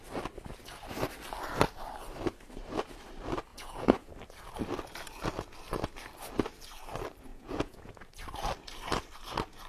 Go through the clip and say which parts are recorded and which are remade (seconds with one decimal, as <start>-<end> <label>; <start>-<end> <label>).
0.0-3.5 recorded; 3.5-4.1 remade; 4.1-7.3 recorded; 7.3-7.9 remade; 7.9-9.7 recorded